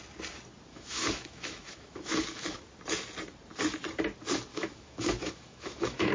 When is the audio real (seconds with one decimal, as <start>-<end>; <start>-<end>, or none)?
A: 0.0-0.7; 2.6-4.5